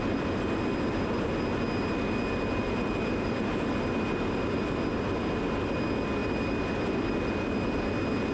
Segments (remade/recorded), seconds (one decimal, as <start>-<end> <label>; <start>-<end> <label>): 0.0-2.6 recorded; 2.6-3.7 remade; 3.7-6.2 recorded; 6.2-7.9 remade; 7.9-8.3 recorded